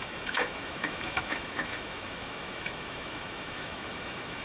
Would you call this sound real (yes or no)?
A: no